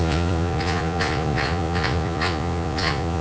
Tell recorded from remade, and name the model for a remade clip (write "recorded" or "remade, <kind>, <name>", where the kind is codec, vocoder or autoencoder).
remade, vocoder, Vocos